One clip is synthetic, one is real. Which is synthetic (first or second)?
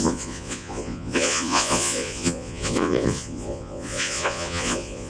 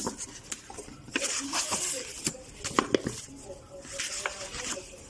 first